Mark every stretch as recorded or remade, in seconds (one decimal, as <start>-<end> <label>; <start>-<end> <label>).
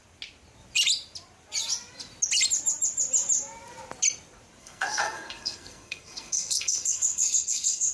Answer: 0.0-4.6 recorded; 4.6-7.9 remade